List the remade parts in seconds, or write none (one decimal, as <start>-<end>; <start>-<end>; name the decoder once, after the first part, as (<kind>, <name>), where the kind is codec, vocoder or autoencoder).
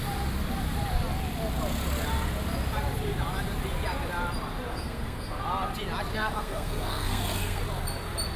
4.7-5.4 (codec, SNAC); 6.1-7.6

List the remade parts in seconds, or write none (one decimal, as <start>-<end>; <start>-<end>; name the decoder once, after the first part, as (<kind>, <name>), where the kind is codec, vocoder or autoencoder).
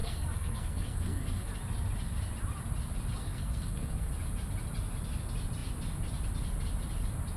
0.0-1.5 (codec, SNAC); 3.2-4.1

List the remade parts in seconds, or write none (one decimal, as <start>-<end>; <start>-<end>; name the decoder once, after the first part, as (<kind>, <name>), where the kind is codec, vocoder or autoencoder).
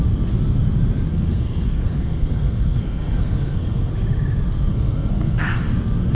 1.1-3.9 (codec, SNAC); 4.7-5.6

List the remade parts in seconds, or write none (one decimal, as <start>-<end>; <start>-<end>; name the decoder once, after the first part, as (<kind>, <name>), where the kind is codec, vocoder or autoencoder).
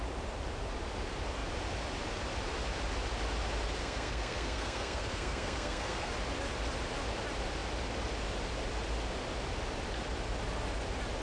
3.8-6.1 (codec, SNAC)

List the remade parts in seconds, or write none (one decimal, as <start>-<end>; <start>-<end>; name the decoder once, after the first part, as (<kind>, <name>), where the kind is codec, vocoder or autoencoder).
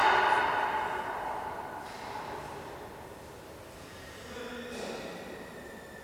none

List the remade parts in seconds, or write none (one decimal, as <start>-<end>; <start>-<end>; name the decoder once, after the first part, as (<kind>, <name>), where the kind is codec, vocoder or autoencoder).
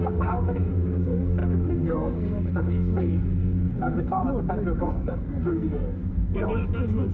0.0-4.2 (codec, SNAC); 4.8-7.1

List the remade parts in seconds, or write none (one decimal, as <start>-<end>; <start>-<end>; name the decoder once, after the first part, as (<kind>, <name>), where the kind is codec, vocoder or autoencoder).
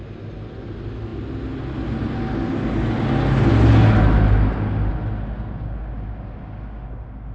none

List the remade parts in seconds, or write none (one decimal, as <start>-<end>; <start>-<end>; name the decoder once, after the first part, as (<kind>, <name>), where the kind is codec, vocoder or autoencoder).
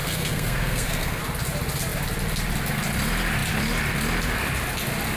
0.0-1.2 (codec, SNAC)